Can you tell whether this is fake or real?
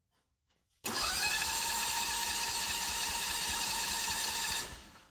fake